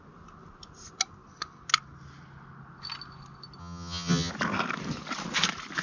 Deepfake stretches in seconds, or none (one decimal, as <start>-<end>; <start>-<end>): 3.6-4.3